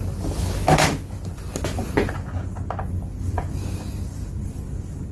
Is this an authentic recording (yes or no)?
yes